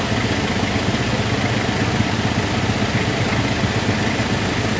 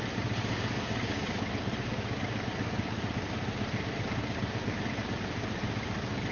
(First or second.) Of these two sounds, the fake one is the second